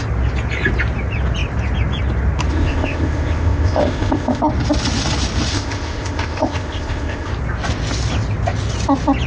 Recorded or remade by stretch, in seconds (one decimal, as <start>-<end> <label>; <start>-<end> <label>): 0.0-2.5 recorded; 2.5-4.4 remade; 4.4-5.5 recorded; 5.5-7.3 remade; 7.3-9.3 recorded